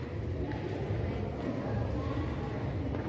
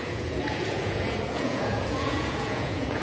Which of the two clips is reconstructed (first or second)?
second